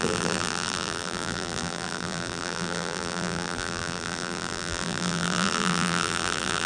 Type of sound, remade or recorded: remade